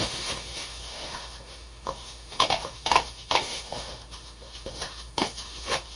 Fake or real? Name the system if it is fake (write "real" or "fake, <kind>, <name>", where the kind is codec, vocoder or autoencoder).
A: fake, autoencoder, DAC-VAE